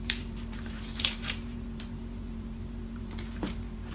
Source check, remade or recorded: remade